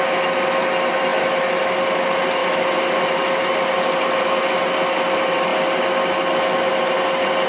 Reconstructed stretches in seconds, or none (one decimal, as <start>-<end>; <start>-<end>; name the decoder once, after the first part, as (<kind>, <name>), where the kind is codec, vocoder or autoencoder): 1.1-1.8 (autoencoder, DAC-VAE)